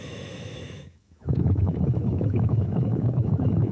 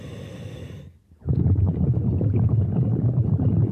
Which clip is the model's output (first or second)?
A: first